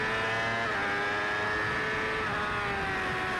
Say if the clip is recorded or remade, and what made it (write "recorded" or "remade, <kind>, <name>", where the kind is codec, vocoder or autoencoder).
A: recorded